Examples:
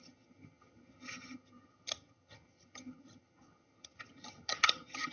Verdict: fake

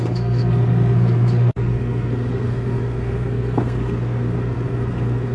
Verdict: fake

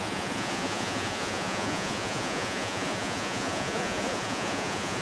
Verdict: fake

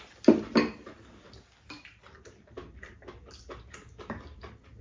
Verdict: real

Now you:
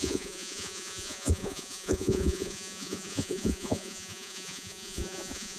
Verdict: fake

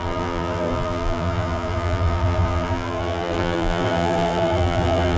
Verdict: fake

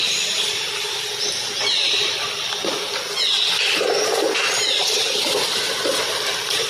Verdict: fake